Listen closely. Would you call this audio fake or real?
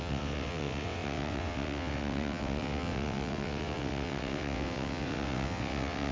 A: fake